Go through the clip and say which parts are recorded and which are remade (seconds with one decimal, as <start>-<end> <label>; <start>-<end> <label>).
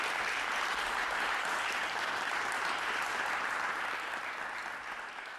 0.0-0.7 recorded; 0.7-3.9 remade; 3.9-5.4 recorded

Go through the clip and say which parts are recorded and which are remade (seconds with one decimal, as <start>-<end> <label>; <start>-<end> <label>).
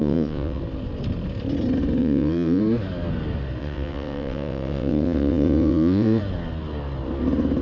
0.0-0.6 remade; 0.6-2.0 recorded; 2.0-2.6 remade; 2.6-3.6 recorded; 3.6-6.2 remade; 6.2-7.6 recorded